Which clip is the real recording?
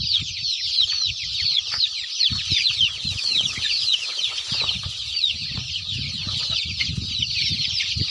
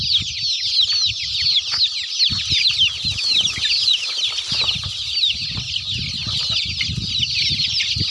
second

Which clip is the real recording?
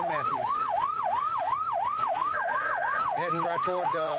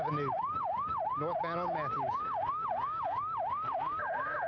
second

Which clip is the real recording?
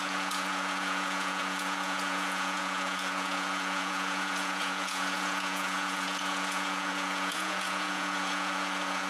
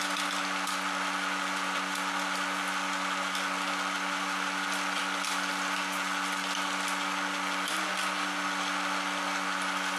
second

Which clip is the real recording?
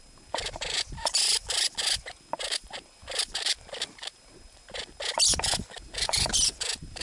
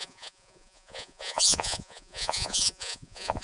first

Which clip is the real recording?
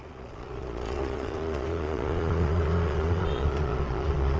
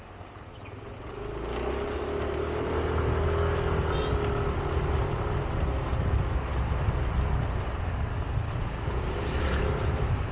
second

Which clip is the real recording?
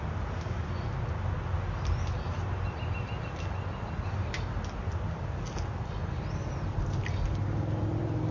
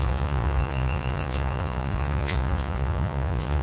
first